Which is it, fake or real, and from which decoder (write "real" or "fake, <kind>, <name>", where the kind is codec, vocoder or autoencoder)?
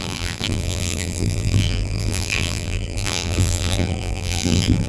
fake, vocoder, BigVGAN v2